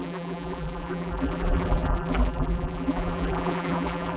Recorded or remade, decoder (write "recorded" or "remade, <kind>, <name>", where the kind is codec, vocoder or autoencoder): remade, vocoder, BigVGAN v2